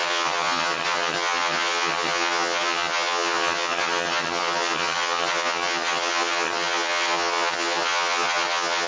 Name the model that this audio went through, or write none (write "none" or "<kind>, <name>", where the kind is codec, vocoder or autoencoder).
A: vocoder, HiFi-GAN